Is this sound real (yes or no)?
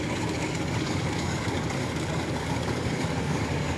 no